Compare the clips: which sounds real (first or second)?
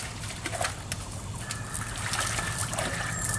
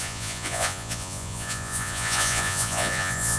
first